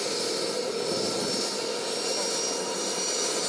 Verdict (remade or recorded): recorded